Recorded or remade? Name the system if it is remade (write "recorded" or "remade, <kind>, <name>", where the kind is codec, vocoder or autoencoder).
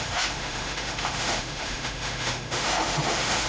remade, autoencoder, DAC-VAE